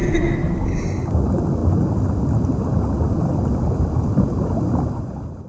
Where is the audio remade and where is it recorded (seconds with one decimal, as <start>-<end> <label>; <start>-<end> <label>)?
0.0-5.5 recorded